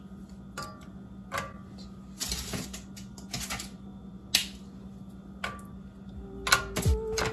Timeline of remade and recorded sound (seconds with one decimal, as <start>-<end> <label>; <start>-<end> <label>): 0.0-7.3 recorded